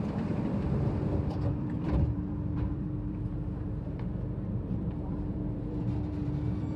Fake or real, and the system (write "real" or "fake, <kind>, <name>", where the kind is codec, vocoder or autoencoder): fake, vocoder, BigVGAN v2